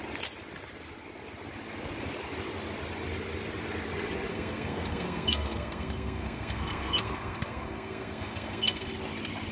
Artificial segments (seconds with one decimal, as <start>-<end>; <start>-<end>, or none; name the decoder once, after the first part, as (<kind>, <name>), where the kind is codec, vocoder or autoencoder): 4.3-8.9 (codec, SNAC)

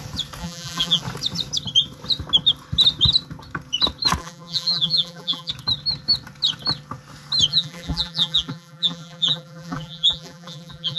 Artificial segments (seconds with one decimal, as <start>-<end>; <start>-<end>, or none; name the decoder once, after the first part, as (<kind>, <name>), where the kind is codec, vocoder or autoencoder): 0.4-1.0 (vocoder, BigVGAN v2); 4.2-5.5; 7.5-11.0